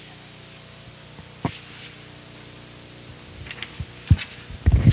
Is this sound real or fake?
real